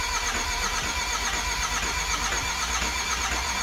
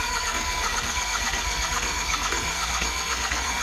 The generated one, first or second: second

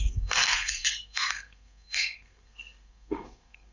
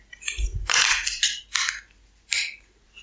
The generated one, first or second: first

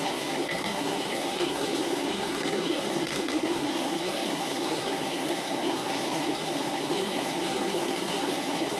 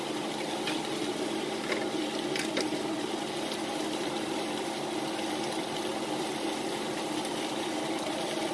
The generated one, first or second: first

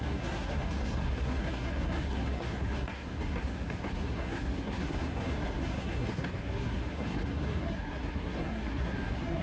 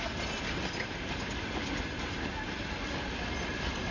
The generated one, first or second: first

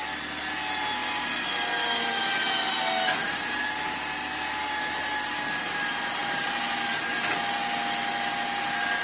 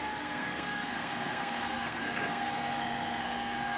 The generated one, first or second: second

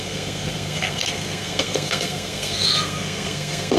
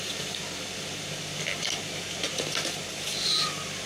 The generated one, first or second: first